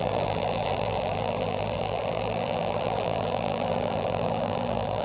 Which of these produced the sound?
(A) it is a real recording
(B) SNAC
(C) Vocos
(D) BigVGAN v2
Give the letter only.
D